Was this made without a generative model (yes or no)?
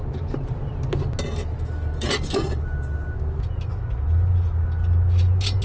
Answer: yes